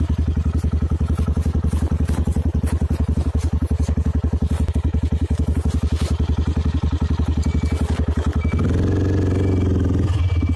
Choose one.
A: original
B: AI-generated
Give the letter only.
A